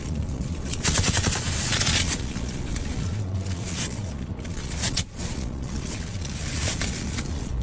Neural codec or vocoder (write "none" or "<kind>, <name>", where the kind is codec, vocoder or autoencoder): vocoder, Vocos